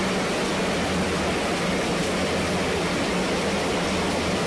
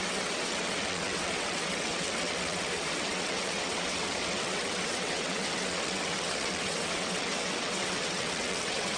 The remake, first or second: second